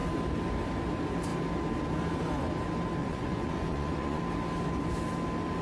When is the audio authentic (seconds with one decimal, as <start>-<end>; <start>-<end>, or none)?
0.0-3.0; 4.2-5.6